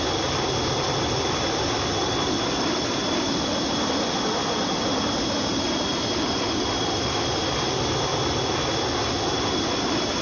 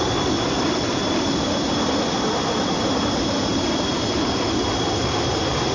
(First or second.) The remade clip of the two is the second